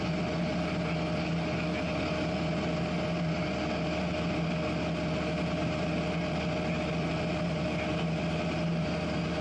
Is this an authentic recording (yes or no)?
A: yes